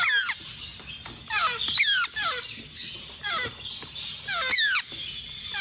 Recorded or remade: recorded